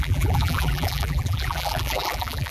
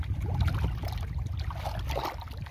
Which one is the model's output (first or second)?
first